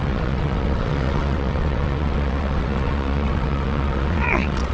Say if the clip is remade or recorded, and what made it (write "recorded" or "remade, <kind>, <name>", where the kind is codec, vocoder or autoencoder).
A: remade, vocoder, WaveNeXt